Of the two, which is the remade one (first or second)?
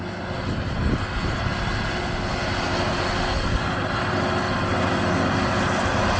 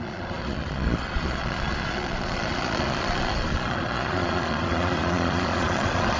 second